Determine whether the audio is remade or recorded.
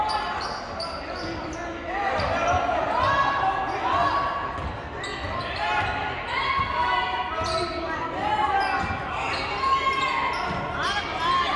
recorded